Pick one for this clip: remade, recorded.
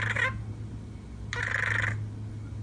recorded